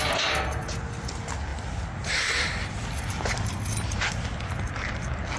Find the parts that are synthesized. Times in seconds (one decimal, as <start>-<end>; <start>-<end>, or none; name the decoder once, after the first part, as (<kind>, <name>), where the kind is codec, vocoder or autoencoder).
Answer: none